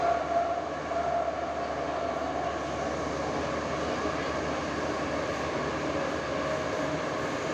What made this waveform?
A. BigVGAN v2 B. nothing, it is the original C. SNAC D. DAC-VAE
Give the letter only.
B